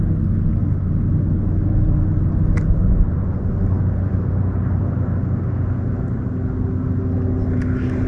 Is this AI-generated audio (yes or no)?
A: no